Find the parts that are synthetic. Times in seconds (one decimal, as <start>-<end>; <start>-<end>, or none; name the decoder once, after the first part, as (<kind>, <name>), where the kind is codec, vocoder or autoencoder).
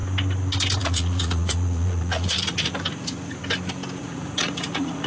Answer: 0.8-3.4 (vocoder, Vocos); 4.0-5.1